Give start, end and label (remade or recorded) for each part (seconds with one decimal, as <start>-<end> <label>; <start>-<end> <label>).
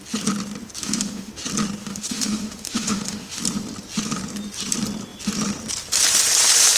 0.0-0.8 recorded; 0.8-1.3 remade; 1.3-1.8 recorded; 1.8-3.4 remade; 3.4-6.8 recorded